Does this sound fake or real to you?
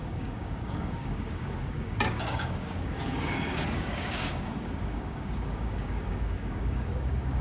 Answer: fake